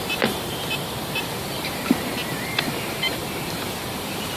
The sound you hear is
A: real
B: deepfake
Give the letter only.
B